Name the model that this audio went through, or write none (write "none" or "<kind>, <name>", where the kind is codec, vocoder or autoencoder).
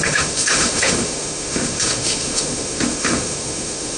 autoencoder, DAC-VAE